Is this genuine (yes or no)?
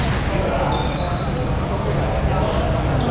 yes